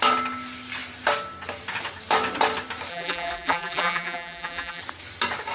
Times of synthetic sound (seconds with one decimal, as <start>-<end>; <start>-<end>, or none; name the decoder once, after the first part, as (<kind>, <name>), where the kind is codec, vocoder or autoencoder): 2.9-4.8 (vocoder, BigVGAN v2)

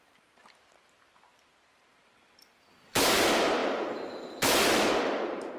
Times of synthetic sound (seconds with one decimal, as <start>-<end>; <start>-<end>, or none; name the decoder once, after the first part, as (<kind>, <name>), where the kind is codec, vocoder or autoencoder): 0.0-5.6 (vocoder, BigVGAN v2)

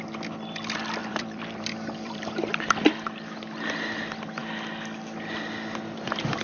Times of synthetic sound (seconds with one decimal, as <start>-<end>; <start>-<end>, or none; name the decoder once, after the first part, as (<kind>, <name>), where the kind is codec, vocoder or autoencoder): 1.0-2.5 (vocoder, BigVGAN v2)

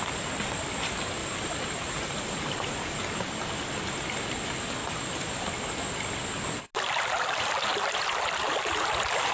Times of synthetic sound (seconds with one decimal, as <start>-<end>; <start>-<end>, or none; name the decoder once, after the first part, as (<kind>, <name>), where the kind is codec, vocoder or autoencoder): 1.2-3.0 (vocoder, BigVGAN v2); 4.8-5.5

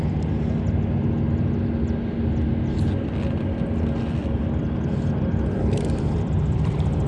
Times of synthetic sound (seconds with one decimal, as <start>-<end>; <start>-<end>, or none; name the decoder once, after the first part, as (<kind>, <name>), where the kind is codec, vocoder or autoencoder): 4.2-7.1 (vocoder, BigVGAN v2)

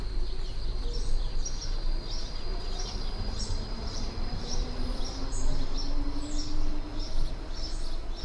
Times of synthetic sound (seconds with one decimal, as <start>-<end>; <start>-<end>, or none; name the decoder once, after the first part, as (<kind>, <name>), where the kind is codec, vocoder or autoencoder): 2.5-5.0 (vocoder, BigVGAN v2)

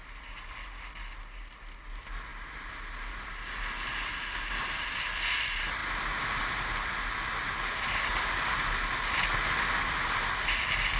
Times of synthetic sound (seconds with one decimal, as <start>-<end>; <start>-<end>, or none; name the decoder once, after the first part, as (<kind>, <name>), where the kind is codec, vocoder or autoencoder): none

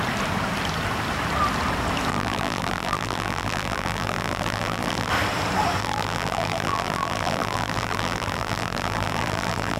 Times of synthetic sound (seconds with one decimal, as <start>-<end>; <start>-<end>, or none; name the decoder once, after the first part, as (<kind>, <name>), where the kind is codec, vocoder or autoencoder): 2.1-5.1 (vocoder, BigVGAN v2); 5.8-9.8